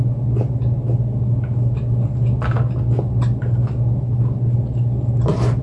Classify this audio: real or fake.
real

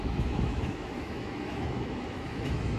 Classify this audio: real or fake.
fake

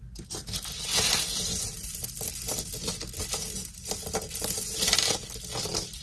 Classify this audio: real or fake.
real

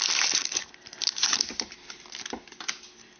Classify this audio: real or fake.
real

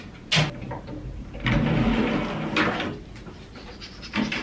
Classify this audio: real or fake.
real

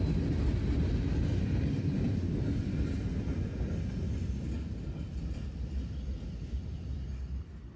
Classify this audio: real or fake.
real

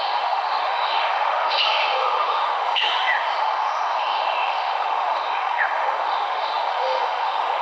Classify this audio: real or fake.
fake